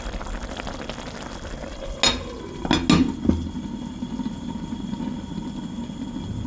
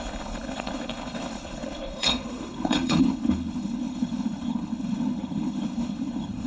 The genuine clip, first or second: first